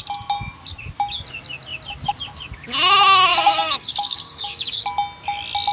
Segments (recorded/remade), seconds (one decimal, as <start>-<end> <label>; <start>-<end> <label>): 0.0-3.3 recorded; 3.3-4.8 remade; 4.8-5.7 recorded